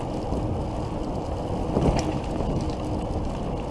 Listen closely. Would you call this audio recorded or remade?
recorded